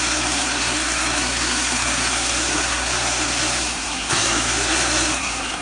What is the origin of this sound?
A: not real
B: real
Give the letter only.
A